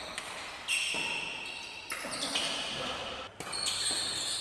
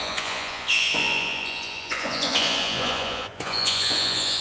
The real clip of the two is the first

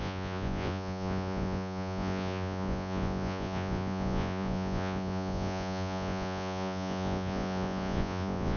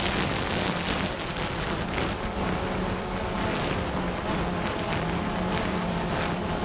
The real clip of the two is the second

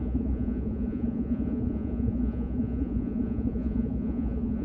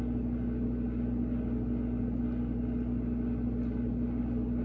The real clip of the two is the second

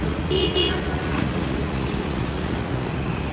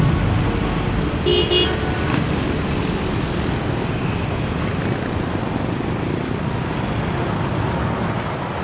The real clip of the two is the second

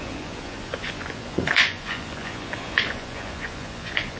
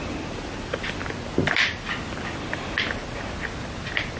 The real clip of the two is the second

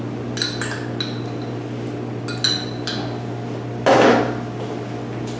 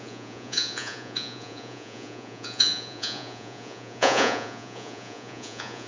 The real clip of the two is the first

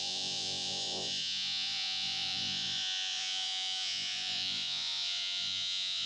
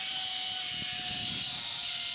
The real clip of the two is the second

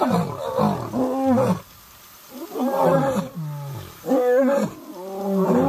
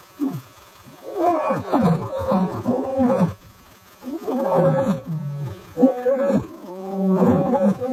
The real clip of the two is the first